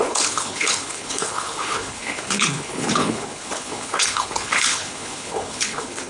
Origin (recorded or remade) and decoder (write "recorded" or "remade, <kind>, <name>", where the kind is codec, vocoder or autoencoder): remade, codec, HILCodec